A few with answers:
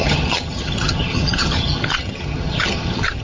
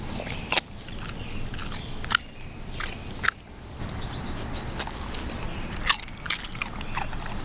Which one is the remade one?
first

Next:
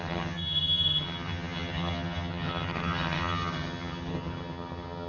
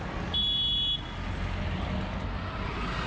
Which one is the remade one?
first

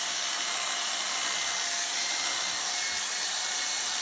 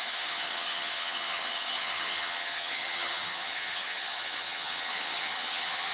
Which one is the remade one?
second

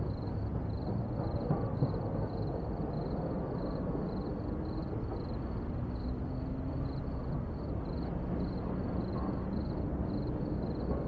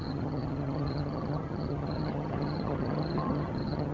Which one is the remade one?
second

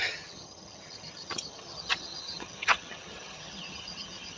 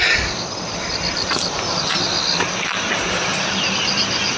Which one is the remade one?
first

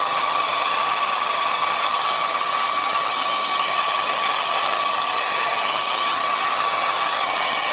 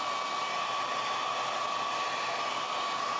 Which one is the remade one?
first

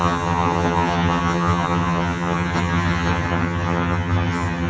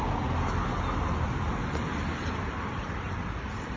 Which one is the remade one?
first